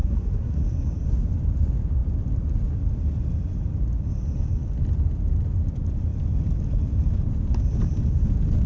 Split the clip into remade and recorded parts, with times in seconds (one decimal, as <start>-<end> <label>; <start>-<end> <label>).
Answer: 0.0-0.6 remade; 0.6-8.7 recorded